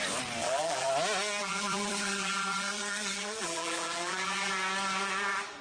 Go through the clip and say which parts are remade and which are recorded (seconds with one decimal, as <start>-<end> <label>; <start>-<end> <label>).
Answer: 0.0-0.4 recorded; 0.4-0.9 remade; 0.9-1.4 recorded; 1.4-4.5 remade; 4.5-5.6 recorded